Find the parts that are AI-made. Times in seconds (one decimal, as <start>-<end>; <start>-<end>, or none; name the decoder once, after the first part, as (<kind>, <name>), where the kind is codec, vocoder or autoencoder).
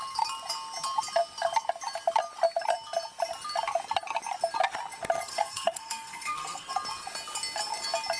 5.3-6.7 (codec, SNAC)